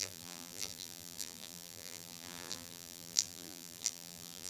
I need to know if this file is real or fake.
fake